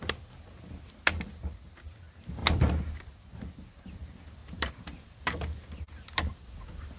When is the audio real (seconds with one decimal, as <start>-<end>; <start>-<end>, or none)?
0.0-4.4; 6.3-7.0